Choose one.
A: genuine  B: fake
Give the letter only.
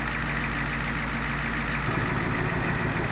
A